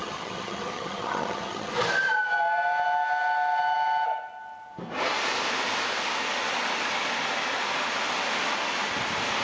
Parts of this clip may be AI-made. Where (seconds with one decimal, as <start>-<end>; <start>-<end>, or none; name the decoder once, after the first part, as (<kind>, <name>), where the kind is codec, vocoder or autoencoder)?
0.0-1.7 (vocoder, HiFi-GAN)